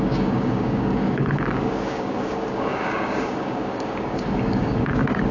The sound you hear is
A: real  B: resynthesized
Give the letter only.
B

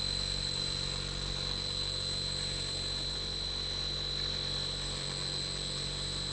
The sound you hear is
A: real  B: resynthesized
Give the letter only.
A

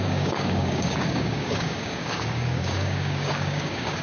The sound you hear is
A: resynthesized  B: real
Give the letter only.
A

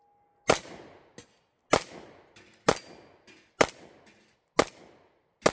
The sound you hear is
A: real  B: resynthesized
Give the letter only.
A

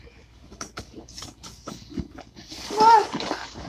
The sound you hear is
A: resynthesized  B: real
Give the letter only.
A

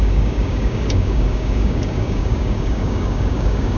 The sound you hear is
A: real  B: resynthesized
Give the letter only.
B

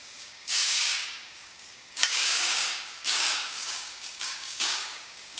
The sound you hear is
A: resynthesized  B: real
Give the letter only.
A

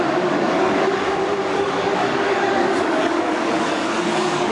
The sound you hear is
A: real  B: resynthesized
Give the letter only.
B